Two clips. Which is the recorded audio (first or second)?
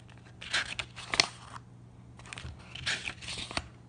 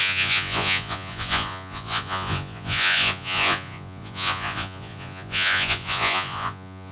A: first